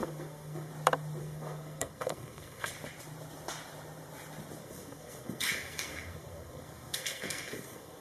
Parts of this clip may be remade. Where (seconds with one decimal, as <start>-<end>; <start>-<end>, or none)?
0.0-0.7; 1.2-2.7; 4.6-8.0